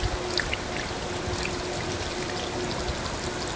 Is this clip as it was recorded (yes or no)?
yes